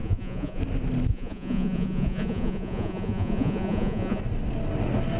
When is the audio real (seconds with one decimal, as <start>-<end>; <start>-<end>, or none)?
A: 0.6-1.1; 4.2-5.2